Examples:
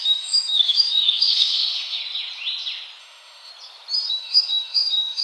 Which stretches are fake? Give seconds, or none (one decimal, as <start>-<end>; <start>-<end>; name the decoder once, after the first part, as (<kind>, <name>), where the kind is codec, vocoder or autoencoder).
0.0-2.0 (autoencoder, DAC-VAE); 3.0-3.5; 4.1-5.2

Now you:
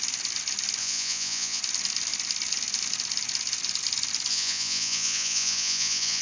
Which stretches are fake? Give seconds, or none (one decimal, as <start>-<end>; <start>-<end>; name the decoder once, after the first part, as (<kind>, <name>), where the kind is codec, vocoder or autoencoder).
0.8-1.6 (vocoder, Vocos); 4.3-6.2

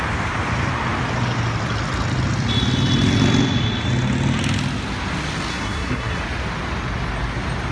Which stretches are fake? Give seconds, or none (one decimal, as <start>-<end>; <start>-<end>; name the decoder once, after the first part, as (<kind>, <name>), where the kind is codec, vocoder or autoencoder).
5.5-6.2 (codec, SNAC)

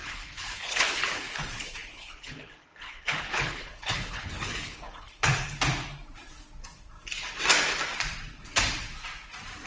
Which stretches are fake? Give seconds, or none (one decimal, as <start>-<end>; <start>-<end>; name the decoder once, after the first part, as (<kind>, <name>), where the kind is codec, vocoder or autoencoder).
0.0-5.1 (codec, HILCodec)

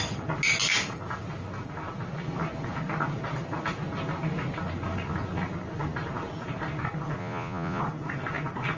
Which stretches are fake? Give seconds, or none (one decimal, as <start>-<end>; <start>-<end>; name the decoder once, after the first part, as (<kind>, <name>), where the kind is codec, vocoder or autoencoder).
7.2-7.8 (vocoder, Vocos)

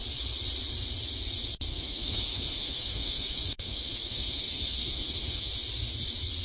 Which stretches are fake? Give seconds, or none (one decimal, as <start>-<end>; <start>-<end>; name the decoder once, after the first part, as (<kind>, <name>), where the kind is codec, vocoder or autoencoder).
1.7-5.5 (autoencoder, DAC-VAE)

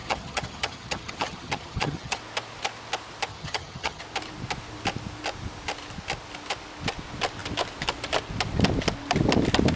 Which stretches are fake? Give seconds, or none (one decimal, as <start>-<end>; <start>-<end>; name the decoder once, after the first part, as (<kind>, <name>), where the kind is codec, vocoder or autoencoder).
0.0-2.2 (vocoder, HiFi-GAN); 3.3-4.0

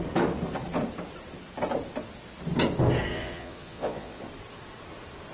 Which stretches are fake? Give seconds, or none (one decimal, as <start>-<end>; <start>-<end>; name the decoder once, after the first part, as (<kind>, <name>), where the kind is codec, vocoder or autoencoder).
3.1-4.2 (vocoder, Vocos)